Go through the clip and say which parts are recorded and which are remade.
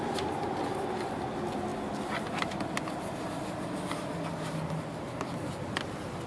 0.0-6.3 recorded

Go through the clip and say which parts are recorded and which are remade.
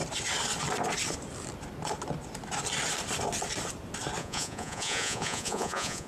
0.0-4.2 recorded; 4.2-6.1 remade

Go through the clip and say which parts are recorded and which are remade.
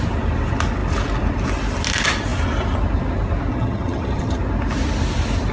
0.0-3.5 recorded; 3.5-4.4 remade; 4.4-5.5 recorded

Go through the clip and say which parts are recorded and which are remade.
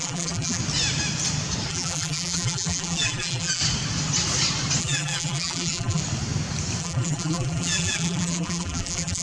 0.0-0.6 remade; 0.6-1.7 recorded; 1.7-3.6 remade; 3.6-4.8 recorded; 4.8-6.0 remade; 6.0-6.8 recorded; 6.8-9.2 remade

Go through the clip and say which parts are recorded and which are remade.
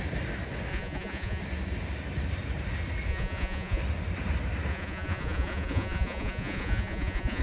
0.0-0.7 recorded; 0.7-1.4 remade; 1.4-3.1 recorded; 3.1-3.8 remade; 3.8-4.7 recorded; 4.7-7.4 remade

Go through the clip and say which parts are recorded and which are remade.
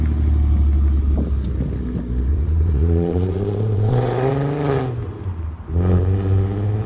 0.0-2.3 recorded; 2.3-4.3 remade; 4.3-6.9 recorded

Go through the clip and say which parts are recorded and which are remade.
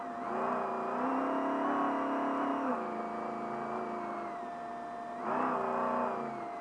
0.0-2.5 recorded; 2.5-3.0 remade; 3.0-6.6 recorded